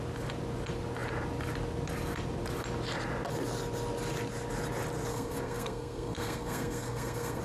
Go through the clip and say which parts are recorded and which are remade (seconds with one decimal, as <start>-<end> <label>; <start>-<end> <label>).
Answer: 0.0-5.1 recorded; 5.1-7.4 remade